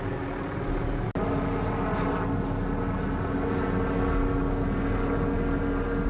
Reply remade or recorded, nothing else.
recorded